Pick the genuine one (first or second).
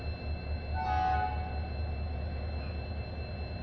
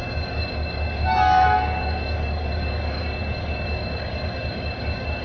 first